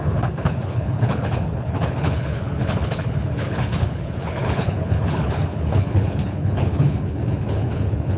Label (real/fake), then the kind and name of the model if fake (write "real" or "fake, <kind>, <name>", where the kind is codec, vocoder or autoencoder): fake, codec, HILCodec